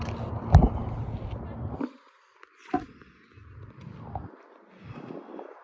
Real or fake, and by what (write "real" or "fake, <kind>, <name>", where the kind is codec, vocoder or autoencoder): real